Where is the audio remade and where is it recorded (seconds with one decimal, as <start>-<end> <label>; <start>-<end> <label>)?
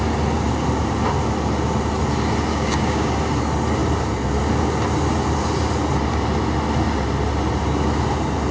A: 0.0-2.5 recorded; 2.5-3.1 remade; 3.1-8.5 recorded